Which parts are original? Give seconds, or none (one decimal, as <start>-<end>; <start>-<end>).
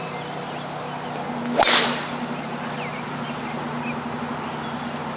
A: 0.0-5.2